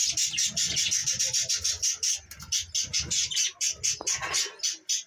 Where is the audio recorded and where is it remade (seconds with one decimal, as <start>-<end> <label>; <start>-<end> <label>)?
0.0-5.1 recorded